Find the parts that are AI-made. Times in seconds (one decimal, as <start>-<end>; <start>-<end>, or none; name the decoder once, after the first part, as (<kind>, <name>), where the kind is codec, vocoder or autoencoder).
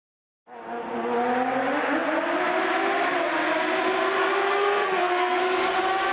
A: 4.2-5.4 (codec, SNAC)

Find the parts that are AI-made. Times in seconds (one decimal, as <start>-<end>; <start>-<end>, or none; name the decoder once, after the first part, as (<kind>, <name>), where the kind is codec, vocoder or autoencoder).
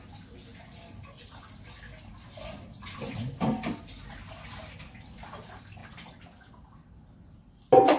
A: none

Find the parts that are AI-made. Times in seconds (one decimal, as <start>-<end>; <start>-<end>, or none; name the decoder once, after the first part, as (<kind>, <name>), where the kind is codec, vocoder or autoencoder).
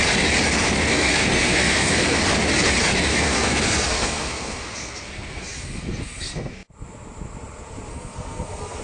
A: 0.9-2.2 (codec, SNAC); 3.1-6.5; 7.9-8.8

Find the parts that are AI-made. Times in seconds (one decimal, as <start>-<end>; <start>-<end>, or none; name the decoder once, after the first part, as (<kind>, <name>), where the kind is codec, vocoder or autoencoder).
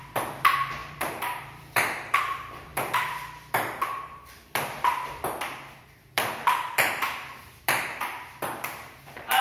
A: 0.0-9.4 (vocoder, BigVGAN v2)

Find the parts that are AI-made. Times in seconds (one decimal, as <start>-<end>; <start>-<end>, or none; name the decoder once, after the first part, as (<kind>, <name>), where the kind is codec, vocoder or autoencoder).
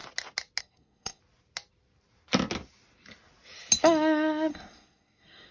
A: 0.6-1.2 (codec, SNAC); 4.5-5.5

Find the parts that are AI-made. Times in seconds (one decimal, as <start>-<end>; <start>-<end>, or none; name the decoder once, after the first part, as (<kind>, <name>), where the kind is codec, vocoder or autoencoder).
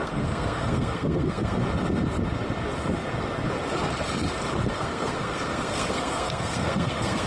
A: 0.0-1.6 (codec, SNAC); 4.7-7.3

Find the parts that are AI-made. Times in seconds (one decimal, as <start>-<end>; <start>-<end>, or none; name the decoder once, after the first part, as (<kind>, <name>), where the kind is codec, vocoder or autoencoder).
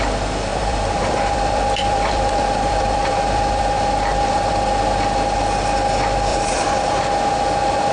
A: 0.5-4.5 (vocoder, BigVGAN v2); 6.3-7.0